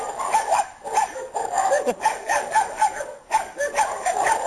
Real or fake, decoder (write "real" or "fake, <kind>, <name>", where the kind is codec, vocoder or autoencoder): fake, codec, DAC